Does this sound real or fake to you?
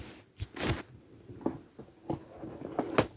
real